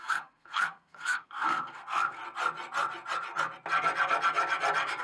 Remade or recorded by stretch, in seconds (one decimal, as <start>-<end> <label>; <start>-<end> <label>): 0.0-2.2 remade; 2.2-5.0 recorded